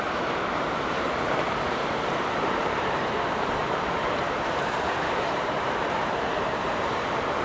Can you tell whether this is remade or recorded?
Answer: remade